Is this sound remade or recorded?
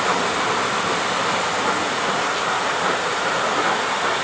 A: recorded